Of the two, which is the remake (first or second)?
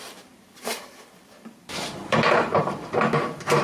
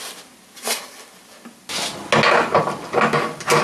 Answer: first